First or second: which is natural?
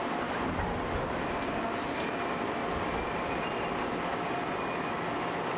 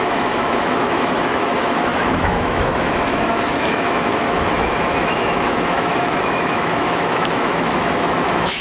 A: first